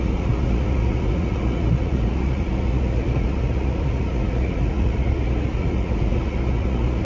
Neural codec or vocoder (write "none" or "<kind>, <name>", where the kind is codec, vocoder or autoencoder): vocoder, Vocos